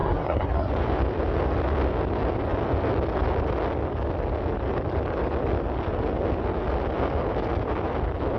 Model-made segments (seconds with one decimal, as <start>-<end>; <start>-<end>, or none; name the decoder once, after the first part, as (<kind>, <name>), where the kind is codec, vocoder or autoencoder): 0.0-0.7 (codec, SNAC)